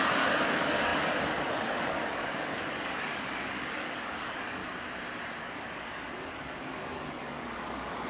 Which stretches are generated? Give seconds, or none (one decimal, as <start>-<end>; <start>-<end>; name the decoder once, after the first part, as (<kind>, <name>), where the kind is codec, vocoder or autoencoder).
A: 0.0-4.6 (codec, DAC); 5.4-8.1